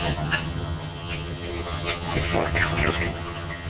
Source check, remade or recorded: remade